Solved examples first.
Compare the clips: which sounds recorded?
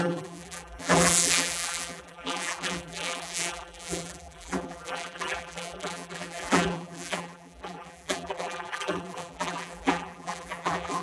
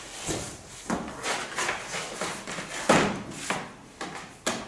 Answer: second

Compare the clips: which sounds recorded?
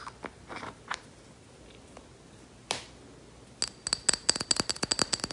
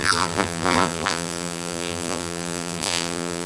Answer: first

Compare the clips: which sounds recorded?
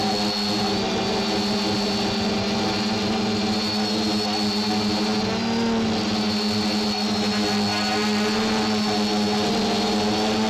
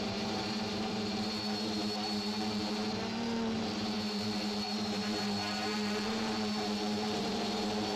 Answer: first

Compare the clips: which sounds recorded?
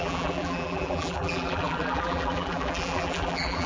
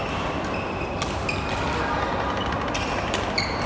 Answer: second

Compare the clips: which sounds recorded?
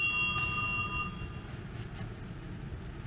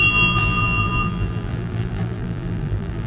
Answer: first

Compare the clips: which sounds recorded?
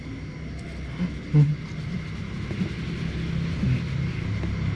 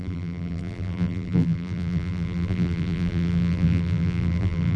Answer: first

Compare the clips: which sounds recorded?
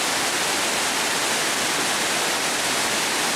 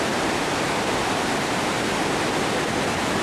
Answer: first